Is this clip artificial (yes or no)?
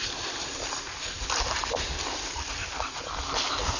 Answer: no